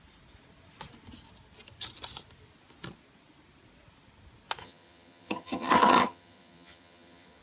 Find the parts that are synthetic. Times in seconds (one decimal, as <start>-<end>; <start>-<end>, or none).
4.6-7.4